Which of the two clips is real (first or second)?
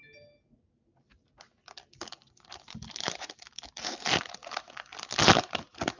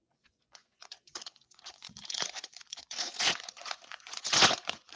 first